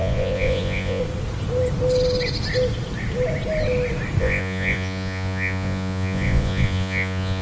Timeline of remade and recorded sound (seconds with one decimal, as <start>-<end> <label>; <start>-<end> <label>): 0.0-1.0 remade; 1.0-4.2 recorded; 4.2-7.4 remade